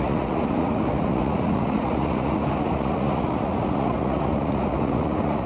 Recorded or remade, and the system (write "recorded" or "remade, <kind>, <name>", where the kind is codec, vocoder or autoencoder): remade, vocoder, Vocos